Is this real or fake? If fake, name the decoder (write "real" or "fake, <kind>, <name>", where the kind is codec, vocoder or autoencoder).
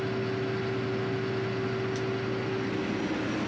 real